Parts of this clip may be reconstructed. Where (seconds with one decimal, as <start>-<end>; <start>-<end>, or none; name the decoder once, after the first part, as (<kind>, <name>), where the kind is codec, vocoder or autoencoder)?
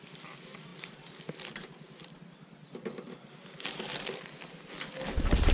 none